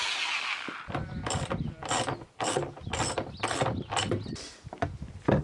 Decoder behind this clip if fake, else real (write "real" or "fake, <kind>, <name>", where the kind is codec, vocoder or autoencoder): real